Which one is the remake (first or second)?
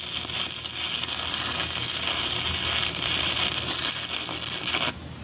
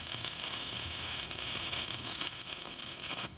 second